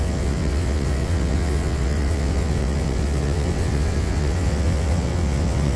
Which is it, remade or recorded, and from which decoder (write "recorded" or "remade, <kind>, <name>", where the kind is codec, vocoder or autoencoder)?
remade, vocoder, WaveNeXt